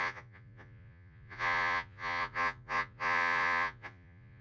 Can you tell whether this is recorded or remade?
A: remade